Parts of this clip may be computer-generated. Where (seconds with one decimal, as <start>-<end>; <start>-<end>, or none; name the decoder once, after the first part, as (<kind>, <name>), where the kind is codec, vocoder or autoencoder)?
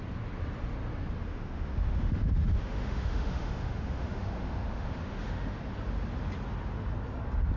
1.3-5.6 (autoencoder, DAC-VAE)